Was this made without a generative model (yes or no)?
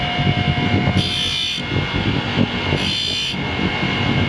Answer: yes